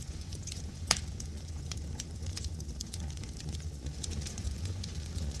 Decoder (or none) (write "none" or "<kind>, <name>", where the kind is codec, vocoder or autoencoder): vocoder, Vocos